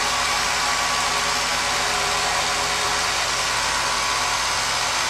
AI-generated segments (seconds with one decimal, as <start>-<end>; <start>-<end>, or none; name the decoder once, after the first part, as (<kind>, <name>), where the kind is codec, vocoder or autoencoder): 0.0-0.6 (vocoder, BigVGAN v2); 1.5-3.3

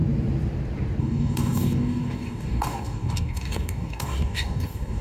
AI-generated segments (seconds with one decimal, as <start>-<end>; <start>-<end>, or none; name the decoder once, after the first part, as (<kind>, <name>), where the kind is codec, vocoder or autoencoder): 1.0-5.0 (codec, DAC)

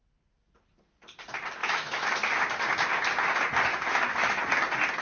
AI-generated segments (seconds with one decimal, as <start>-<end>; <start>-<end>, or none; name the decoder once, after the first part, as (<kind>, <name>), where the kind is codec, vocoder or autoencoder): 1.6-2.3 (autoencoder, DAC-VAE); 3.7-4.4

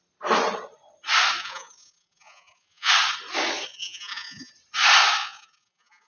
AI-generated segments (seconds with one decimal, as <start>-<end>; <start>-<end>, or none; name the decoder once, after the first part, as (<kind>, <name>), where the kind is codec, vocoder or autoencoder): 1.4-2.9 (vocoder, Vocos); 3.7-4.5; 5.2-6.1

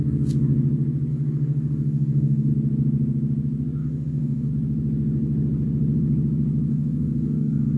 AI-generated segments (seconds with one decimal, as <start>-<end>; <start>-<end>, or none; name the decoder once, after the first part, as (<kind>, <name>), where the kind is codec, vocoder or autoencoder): 1.1-2.5 (autoencoder, DAC-VAE); 3.8-4.5; 6.7-7.8

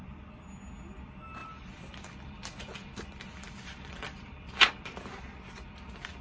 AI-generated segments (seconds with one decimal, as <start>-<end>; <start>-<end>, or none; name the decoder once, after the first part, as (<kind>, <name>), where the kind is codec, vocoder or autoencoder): 1.4-5.0 (vocoder, BigVGAN v2)

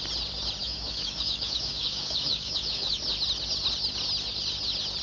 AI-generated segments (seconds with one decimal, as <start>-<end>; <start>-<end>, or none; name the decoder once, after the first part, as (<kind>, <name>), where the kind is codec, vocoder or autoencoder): 0.6-3.0 (autoencoder, DAC-VAE)